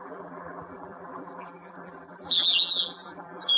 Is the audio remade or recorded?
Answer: remade